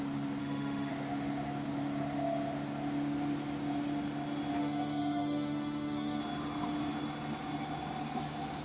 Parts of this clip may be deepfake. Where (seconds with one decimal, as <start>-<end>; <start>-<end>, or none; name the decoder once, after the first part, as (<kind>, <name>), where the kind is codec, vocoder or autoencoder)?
0.4-0.9 (autoencoder, DAC-VAE); 4.6-6.2